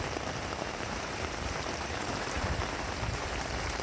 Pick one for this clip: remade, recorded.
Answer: remade